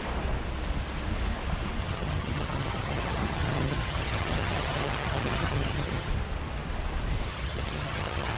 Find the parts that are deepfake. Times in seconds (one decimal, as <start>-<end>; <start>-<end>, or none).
1.8-6.1; 7.3-8.4